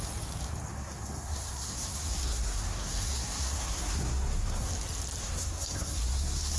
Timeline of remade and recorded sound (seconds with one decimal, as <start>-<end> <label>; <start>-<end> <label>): 0.0-0.7 recorded; 0.7-4.7 remade; 4.7-5.2 recorded; 5.2-6.6 remade